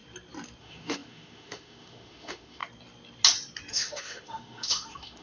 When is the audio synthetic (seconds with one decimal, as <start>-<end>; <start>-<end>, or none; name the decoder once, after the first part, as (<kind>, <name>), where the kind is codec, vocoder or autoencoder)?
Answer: 0.6-2.6 (autoencoder, DAC-VAE); 3.7-5.2